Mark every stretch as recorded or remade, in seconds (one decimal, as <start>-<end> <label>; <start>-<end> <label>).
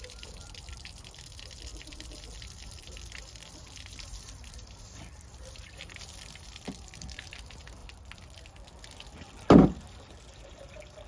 0.0-7.8 remade; 7.8-10.7 recorded; 10.7-11.1 remade